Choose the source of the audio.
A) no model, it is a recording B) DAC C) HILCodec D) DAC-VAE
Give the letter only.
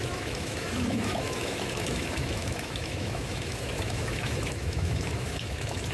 D